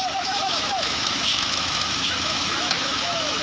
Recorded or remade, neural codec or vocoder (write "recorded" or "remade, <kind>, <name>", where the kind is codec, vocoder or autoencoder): remade, autoencoder, DAC-VAE